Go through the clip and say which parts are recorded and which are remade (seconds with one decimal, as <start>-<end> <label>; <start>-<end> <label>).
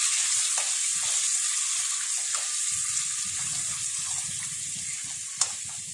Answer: 0.0-5.9 recorded